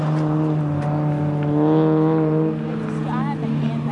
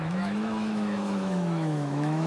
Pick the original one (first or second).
first